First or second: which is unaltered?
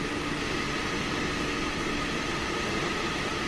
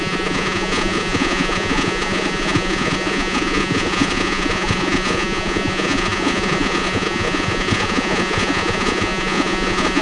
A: first